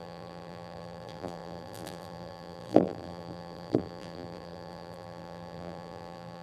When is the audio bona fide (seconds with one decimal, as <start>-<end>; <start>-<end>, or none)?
none